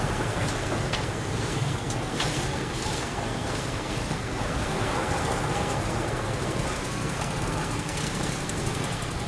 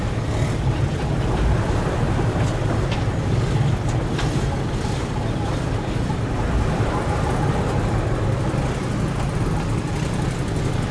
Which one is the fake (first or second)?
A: first